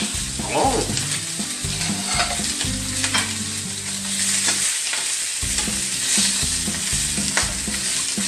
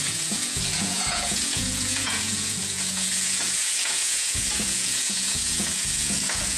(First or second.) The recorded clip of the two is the first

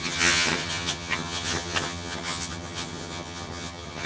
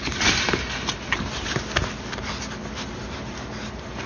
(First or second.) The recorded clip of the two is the second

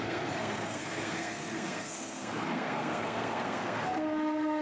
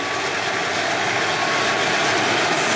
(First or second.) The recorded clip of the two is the second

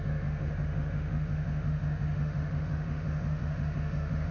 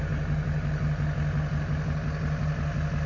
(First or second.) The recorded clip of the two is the second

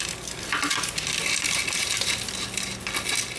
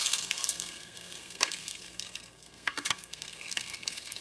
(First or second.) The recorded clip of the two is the first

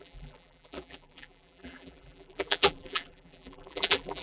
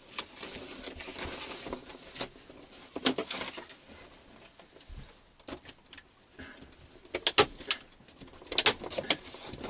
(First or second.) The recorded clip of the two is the second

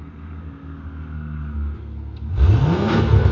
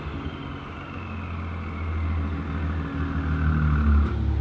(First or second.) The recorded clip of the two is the second